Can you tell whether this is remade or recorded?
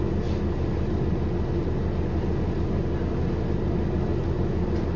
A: recorded